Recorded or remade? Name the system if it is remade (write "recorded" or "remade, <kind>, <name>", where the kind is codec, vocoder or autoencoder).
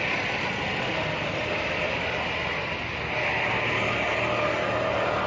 recorded